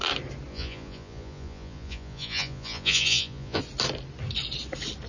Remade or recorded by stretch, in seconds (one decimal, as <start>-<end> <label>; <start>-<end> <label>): 0.0-0.5 recorded; 0.5-3.6 remade; 3.6-5.1 recorded